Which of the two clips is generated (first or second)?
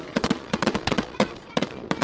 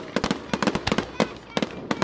first